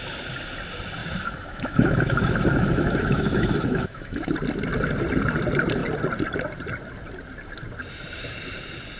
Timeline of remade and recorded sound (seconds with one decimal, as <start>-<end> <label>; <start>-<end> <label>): 0.0-1.0 recorded; 1.0-4.3 remade; 4.3-9.0 recorded

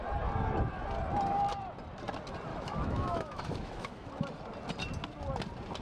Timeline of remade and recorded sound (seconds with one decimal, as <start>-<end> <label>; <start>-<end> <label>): 0.0-2.5 recorded; 2.5-4.1 remade; 4.1-5.8 recorded

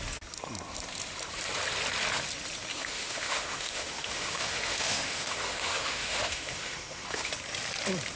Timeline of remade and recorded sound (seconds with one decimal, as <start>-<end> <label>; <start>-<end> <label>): 0.0-2.7 recorded; 2.7-7.3 remade; 7.3-8.2 recorded

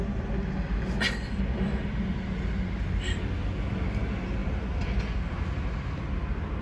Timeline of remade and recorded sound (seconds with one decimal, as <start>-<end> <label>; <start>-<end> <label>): 0.0-6.6 recorded

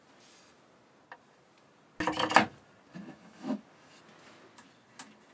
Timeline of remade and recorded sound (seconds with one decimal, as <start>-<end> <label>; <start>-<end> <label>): 0.0-3.0 recorded; 3.0-3.6 remade; 3.6-5.3 recorded

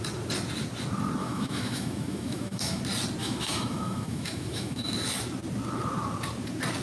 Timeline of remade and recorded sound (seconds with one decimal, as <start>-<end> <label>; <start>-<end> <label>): 0.0-1.2 recorded; 1.2-2.8 remade; 2.8-3.2 recorded; 3.2-4.9 remade; 4.9-6.8 recorded